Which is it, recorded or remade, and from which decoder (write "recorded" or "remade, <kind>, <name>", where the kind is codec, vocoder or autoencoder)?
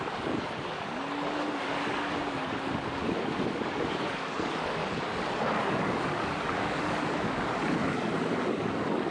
remade, codec, DAC